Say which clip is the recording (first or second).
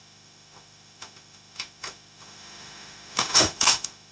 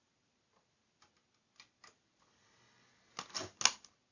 second